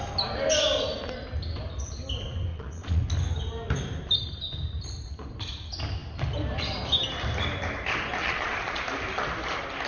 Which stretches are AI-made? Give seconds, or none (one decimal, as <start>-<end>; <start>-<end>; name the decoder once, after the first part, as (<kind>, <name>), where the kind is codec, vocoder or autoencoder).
2.5-3.0 (vocoder, Vocos); 8.2-8.8